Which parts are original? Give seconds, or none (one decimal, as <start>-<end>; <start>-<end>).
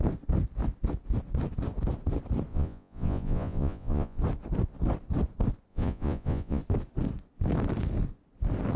0.0-2.5; 4.2-5.7; 6.6-8.8